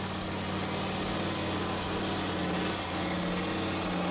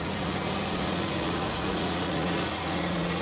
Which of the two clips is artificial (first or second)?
second